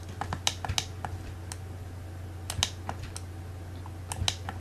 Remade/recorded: recorded